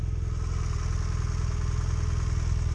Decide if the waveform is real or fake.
real